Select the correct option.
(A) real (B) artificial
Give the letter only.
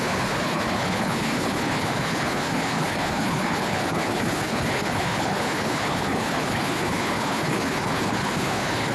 B